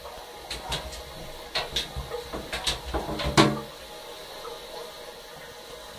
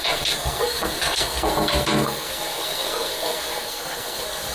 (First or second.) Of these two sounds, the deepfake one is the second